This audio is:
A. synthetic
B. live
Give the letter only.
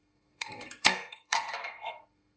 A